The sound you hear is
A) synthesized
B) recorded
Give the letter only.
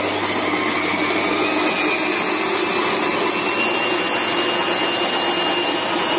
B